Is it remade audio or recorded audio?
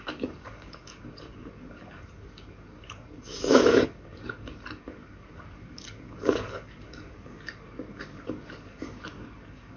remade